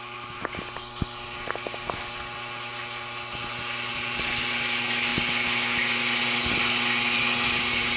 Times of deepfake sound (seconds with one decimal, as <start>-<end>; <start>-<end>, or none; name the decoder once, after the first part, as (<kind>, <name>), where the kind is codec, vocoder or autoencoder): none